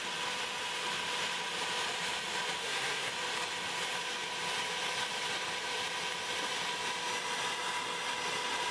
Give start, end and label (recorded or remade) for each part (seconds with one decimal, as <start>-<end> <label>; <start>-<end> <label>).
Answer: 0.0-2.6 recorded; 2.6-3.1 remade; 3.1-8.7 recorded